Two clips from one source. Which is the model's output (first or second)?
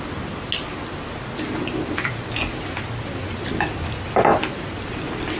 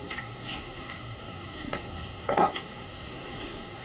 second